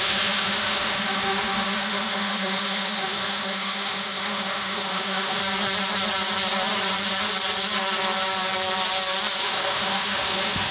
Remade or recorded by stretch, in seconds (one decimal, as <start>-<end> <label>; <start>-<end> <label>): 0.0-5.4 remade; 5.4-9.4 recorded; 9.4-10.7 remade